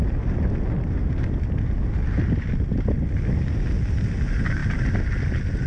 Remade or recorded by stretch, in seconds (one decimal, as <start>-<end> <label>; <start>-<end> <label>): 0.0-5.7 recorded